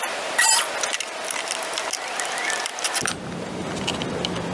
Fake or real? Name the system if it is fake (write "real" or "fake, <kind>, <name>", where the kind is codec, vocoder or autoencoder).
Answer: real